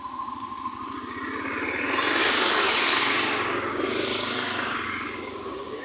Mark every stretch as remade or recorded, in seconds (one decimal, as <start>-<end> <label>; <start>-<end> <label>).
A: 0.0-2.2 recorded; 2.2-5.8 remade